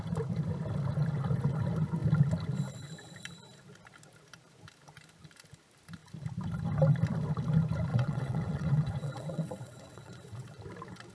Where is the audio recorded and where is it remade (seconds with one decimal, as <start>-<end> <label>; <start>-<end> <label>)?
0.0-7.9 recorded; 7.9-10.6 remade; 10.6-11.1 recorded